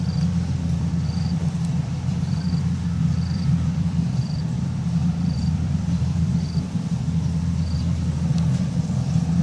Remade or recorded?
remade